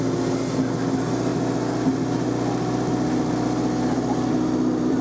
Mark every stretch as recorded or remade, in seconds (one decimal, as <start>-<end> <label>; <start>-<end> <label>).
0.0-5.0 recorded